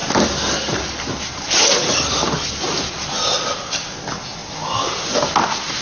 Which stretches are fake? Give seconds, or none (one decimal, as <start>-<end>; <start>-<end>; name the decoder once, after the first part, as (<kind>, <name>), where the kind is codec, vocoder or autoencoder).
none